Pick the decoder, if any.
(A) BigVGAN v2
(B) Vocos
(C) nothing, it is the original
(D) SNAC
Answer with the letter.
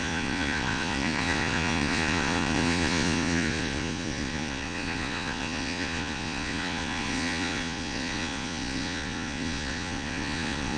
B